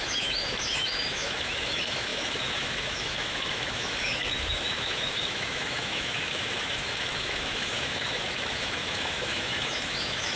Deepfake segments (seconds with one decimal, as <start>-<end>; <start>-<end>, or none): 0.0-10.4

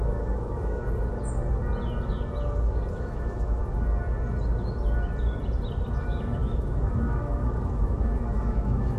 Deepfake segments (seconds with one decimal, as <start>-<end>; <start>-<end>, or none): 0.0-0.8; 2.9-3.6; 6.0-9.0

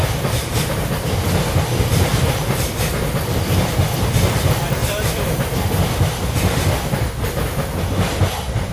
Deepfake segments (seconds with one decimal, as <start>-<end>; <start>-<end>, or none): 2.1-2.7

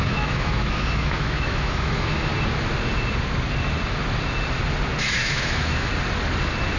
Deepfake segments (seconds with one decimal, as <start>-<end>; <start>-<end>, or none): 0.0-2.3; 5.1-5.9

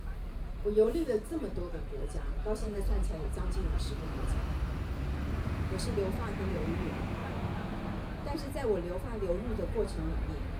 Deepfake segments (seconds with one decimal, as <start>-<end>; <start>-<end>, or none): 0.0-4.4; 6.5-7.2; 10.1-10.6

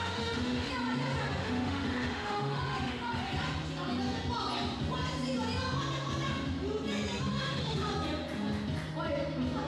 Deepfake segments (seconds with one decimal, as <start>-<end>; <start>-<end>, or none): 0.0-0.7; 1.4-3.3; 7.3-7.9